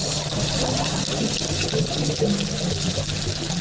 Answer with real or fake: real